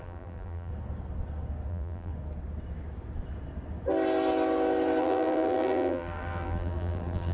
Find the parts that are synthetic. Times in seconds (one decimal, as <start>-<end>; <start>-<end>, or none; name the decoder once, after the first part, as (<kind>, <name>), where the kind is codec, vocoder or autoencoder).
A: 0.0-0.7 (vocoder, BigVGAN v2); 1.7-2.1; 5.0-7.3